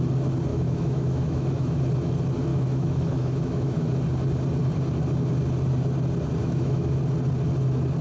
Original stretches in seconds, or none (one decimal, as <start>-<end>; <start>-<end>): 0.0-0.5; 1.8-2.5; 3.9-6.4; 7.0-8.0